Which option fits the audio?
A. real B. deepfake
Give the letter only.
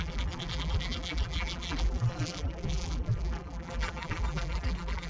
B